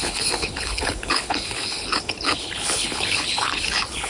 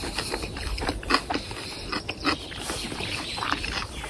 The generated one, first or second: first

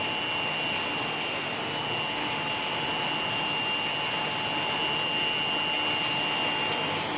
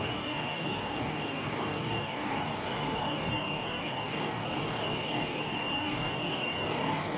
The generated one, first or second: second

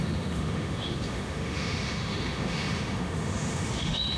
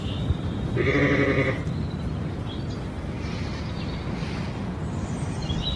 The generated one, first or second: first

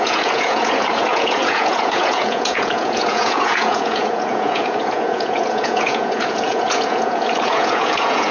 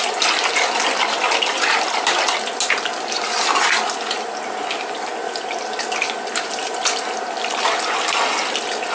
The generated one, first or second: first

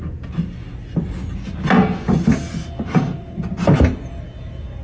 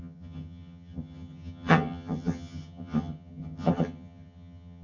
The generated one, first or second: second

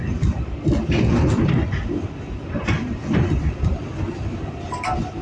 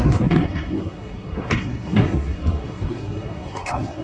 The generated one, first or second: second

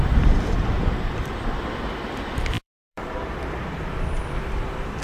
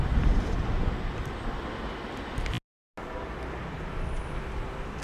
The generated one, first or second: first